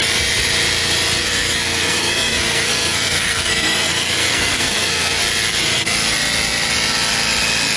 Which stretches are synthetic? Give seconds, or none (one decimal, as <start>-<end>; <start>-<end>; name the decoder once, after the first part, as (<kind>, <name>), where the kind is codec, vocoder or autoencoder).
1.2-5.2 (codec, SNAC)